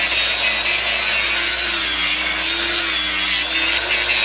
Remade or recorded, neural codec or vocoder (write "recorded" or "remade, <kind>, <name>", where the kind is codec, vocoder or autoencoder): recorded